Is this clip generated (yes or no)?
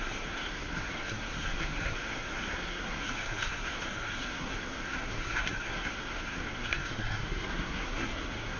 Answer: yes